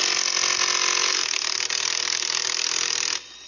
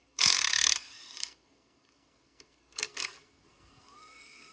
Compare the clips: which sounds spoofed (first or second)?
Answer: second